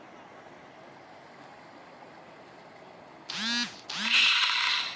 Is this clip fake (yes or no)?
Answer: no